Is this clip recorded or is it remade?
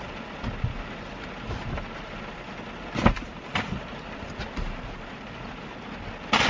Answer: recorded